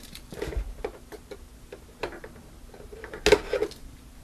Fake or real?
real